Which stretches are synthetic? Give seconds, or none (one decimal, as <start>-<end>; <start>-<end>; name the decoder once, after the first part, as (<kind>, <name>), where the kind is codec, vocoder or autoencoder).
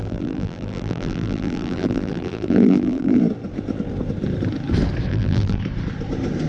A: 0.0-3.2 (vocoder, BigVGAN v2); 5.1-5.6